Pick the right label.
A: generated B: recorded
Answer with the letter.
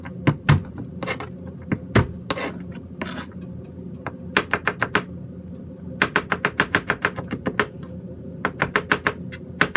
B